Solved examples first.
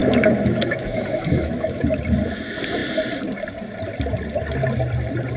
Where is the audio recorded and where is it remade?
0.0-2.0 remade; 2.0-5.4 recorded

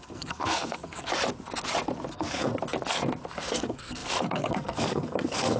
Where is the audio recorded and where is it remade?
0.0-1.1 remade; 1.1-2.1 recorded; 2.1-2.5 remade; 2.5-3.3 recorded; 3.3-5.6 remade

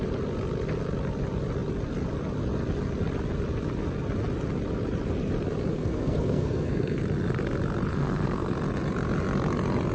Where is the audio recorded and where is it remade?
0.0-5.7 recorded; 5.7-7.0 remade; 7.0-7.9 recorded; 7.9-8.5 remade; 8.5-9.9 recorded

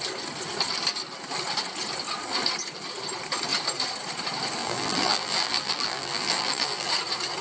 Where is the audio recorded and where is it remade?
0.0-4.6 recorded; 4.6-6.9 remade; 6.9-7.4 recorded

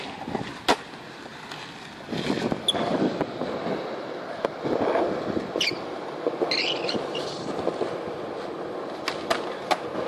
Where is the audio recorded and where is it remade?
0.0-10.1 recorded

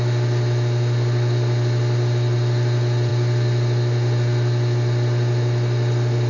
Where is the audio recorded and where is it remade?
0.0-6.3 recorded